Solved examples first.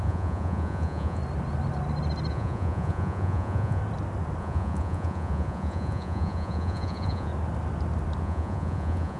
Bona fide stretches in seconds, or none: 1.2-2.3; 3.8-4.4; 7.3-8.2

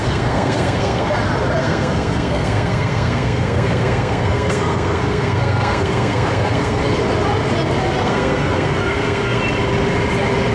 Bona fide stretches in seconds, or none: 1.1-1.6; 6.8-8.0; 9.4-10.5

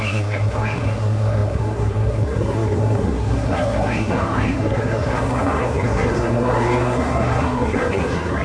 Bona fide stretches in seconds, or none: none

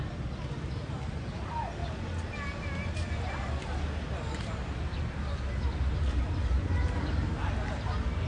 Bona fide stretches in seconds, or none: 0.0-8.3